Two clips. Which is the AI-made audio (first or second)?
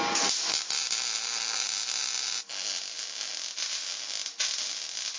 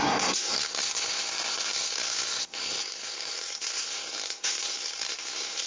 second